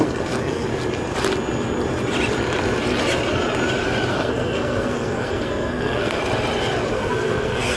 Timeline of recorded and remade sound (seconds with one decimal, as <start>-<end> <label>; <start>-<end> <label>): 0.0-0.7 remade; 0.7-4.1 recorded; 4.1-6.2 remade; 6.2-6.9 recorded; 6.9-7.8 remade